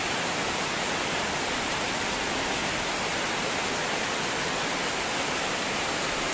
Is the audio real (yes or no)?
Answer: yes